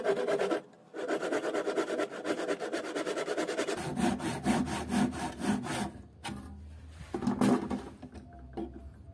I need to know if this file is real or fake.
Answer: real